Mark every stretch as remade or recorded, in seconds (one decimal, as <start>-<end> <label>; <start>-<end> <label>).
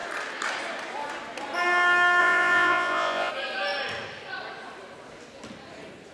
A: 0.0-2.2 recorded; 2.2-3.3 remade; 3.3-6.1 recorded